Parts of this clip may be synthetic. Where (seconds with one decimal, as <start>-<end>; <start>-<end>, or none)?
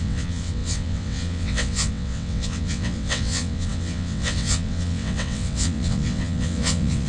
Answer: 0.0-7.1